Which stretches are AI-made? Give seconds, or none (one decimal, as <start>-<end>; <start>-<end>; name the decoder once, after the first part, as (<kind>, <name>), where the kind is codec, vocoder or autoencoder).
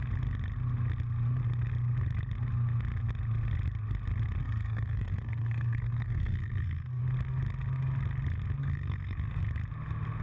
4.4-7.0 (codec, SNAC); 8.6-9.4